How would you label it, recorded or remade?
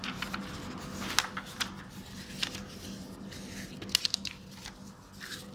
recorded